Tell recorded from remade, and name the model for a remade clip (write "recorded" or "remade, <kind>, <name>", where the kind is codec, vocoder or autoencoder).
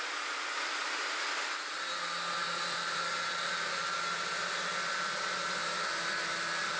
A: recorded